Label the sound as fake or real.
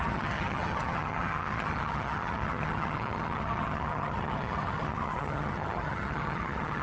fake